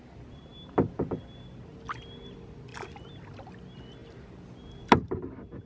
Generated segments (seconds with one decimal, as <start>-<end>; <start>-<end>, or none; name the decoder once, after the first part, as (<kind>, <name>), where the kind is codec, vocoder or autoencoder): none

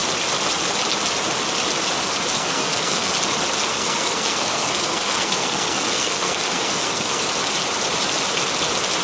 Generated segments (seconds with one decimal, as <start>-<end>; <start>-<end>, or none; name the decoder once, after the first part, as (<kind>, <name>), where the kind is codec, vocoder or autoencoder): 2.3-3.1 (codec, SNAC); 3.7-7.2

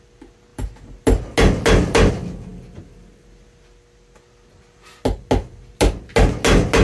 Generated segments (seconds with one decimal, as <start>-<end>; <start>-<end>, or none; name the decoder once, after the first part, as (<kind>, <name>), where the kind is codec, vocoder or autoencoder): none

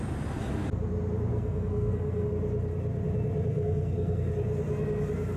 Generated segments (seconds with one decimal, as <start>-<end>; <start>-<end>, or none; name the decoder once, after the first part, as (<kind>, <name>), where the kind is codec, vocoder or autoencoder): 1.3-2.3 (codec, SNAC); 3.5-4.3